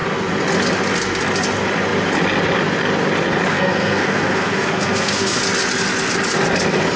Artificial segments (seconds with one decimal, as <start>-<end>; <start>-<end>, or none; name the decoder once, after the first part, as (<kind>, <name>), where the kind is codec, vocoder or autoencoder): 3.5-5.4 (codec, SNAC)